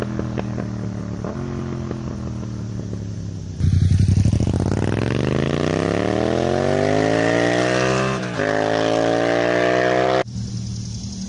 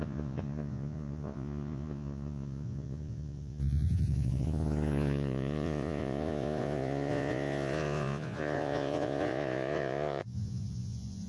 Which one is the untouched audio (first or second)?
first